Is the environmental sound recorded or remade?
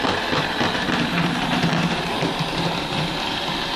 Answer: remade